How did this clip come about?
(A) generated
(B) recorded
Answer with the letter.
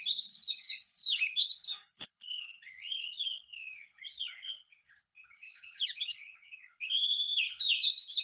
A